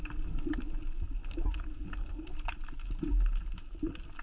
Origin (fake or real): real